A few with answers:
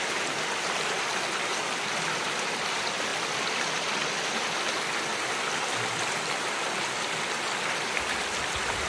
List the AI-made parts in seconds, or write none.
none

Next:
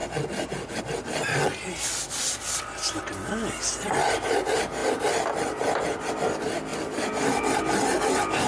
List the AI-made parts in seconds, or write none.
none

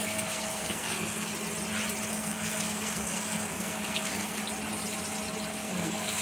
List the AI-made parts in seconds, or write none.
0.0-1.3 (codec, SNAC); 2.1-4.4; 5.5-6.2

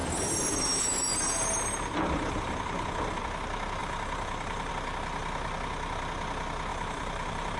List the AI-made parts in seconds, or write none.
0.0-3.2 (vocoder, BigVGAN v2); 3.8-4.7; 6.7-7.6

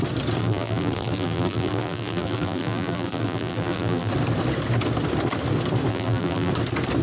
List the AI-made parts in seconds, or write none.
0.4-4.1 (vocoder, BigVGAN v2); 5.9-6.5

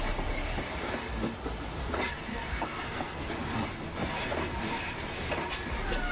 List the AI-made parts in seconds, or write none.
2.3-3.3 (codec, SNAC)

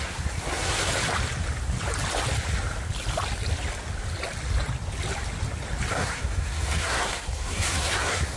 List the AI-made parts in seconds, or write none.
0.0-0.9 (codec, SNAC); 5.9-8.4

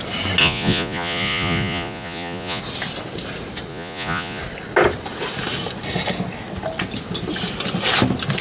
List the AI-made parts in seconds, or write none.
0.4-2.6 (vocoder, Vocos); 3.7-4.4